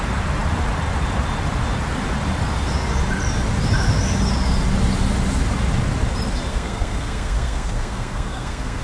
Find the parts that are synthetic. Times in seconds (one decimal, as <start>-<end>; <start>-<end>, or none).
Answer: 6.5-8.8